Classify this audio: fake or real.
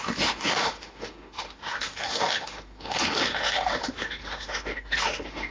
fake